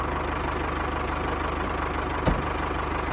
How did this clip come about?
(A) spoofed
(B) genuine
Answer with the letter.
B